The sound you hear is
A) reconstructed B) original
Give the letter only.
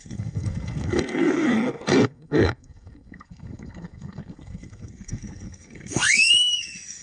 A